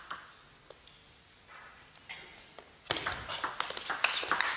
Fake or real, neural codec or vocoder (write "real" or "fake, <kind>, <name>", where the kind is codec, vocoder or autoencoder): real